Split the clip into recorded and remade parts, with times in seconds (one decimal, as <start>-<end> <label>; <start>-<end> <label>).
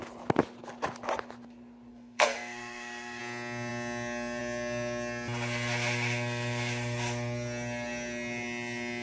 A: 0.0-1.9 recorded; 1.9-3.2 remade; 3.2-9.0 recorded